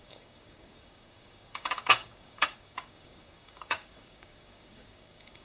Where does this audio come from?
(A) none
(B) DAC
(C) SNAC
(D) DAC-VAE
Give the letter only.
B